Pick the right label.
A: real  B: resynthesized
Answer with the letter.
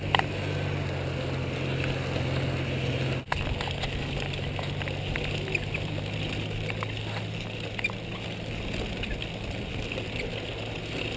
A